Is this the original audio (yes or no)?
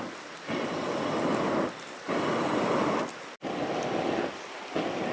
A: yes